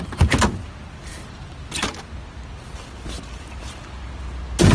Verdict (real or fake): real